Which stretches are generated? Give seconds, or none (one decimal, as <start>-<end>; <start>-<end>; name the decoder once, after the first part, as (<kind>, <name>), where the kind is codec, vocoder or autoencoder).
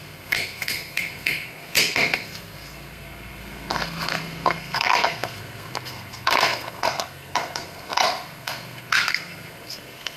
0.0-10.2 (codec, SNAC)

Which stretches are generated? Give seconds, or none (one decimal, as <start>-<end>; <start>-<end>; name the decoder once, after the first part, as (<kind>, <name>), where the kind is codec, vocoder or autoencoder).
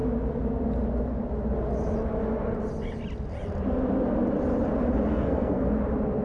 5.1-5.7 (codec, SNAC)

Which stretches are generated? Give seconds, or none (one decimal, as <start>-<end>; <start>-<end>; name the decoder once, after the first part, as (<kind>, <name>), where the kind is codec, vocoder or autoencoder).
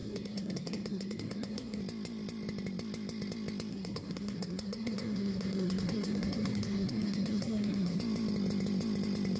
0.0-1.8 (codec, SNAC); 3.7-8.0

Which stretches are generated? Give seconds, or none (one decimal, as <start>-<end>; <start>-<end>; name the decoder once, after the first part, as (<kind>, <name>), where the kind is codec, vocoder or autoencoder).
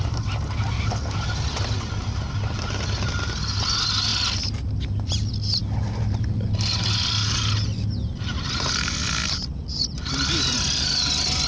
none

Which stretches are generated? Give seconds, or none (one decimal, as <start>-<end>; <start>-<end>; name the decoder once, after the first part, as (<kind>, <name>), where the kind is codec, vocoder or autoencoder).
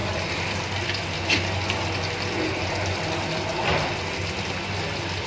none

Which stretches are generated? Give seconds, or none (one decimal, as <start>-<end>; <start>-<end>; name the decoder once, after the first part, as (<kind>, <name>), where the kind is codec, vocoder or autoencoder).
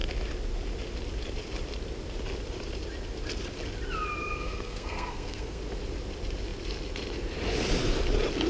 4.2-5.6 (codec, SNAC)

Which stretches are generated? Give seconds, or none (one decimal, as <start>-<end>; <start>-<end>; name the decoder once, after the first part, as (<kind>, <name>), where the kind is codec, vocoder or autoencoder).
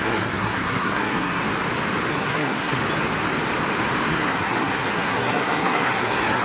0.0-1.4 (codec, SNAC); 2.1-2.8; 4.1-6.4